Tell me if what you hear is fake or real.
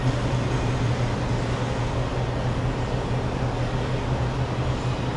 real